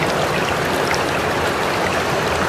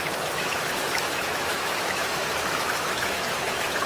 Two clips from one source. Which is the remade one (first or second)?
second